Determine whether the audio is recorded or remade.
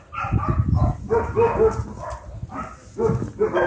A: recorded